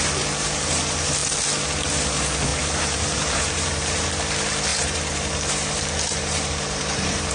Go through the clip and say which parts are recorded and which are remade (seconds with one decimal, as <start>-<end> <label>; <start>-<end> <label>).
0.0-2.5 recorded; 2.5-4.1 remade; 4.1-4.7 recorded; 4.7-7.3 remade